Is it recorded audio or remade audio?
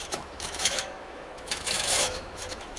remade